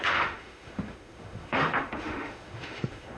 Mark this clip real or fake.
fake